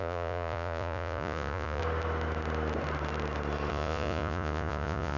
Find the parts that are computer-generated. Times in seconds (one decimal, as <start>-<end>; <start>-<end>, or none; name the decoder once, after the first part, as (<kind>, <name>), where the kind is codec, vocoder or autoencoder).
0.0-1.8 (vocoder, Vocos); 3.7-5.2